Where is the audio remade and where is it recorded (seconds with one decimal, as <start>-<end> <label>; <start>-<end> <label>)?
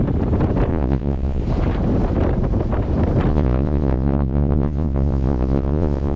0.0-0.7 recorded; 0.7-1.4 remade; 1.4-3.3 recorded; 3.3-6.2 remade